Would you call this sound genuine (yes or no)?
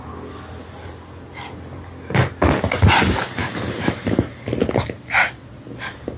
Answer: yes